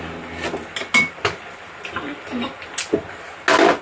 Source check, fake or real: real